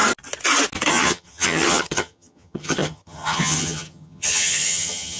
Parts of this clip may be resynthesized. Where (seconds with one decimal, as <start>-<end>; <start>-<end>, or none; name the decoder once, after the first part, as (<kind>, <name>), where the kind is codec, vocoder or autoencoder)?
0.9-5.2 (vocoder, HiFi-GAN)